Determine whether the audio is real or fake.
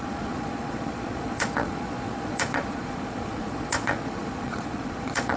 fake